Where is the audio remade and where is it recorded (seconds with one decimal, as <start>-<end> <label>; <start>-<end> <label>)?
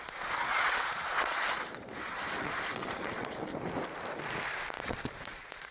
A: 0.0-3.5 remade; 3.5-4.8 recorded; 4.8-5.7 remade